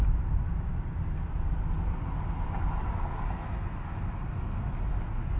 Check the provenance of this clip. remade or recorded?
recorded